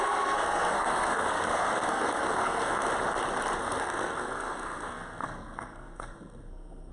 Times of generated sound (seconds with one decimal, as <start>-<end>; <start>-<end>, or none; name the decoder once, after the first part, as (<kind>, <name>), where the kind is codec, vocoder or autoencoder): 0.0-2.9 (codec, SNAC); 3.6-6.9